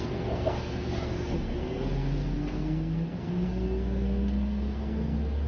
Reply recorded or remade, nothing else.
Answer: remade